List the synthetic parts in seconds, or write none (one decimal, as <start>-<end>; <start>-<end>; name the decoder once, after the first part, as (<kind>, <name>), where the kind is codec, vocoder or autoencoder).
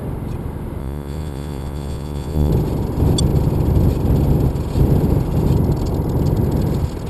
0.8-2.5 (vocoder, Vocos)